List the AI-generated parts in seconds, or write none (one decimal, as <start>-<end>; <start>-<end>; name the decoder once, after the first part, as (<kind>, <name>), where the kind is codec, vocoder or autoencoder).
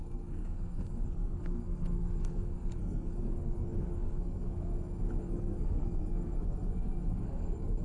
0.0-4.7 (codec, SNAC); 5.2-7.8